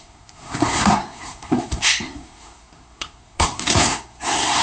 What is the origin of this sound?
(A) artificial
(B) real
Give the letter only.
A